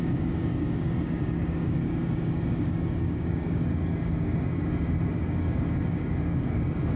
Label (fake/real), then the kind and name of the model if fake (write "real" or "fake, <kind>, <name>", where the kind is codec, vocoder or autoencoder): fake, codec, DAC